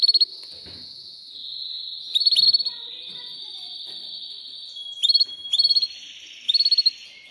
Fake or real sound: real